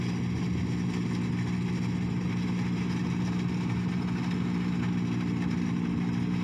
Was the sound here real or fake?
real